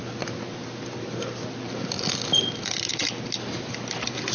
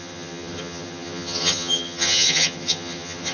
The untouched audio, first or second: first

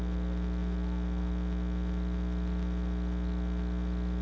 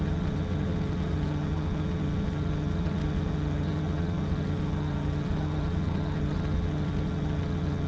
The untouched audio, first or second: first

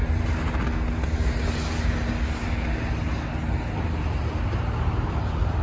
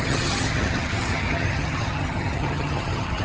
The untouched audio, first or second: first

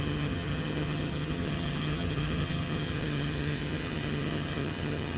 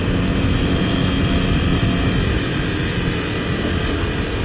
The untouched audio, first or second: second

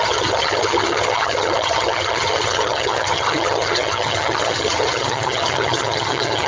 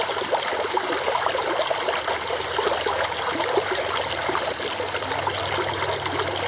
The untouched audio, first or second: second